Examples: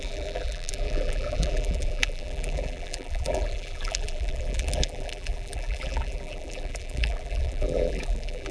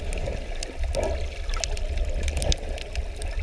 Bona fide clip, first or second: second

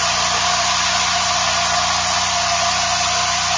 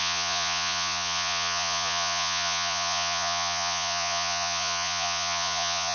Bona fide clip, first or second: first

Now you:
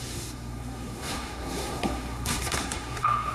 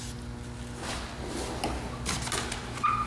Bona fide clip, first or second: second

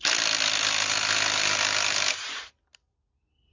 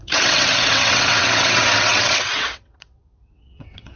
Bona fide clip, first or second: first